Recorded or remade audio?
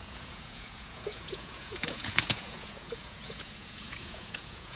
remade